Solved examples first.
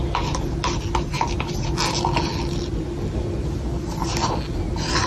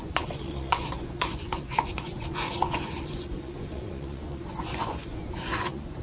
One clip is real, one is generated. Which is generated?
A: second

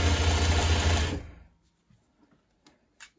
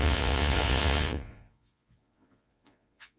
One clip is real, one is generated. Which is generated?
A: second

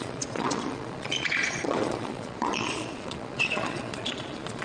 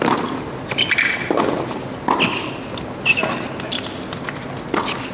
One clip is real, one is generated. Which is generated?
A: first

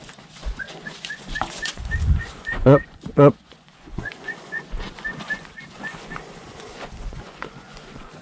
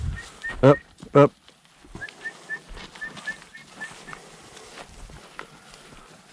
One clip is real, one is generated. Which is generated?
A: first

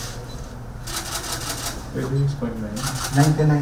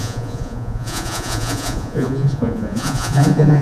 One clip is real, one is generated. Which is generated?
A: second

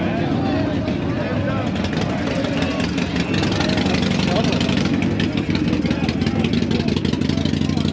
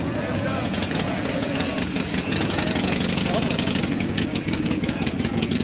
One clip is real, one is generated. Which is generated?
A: second